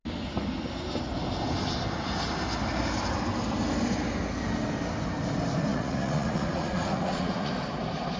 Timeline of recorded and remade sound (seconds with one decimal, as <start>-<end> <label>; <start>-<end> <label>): 0.0-5.7 recorded; 5.7-7.5 remade; 7.5-8.2 recorded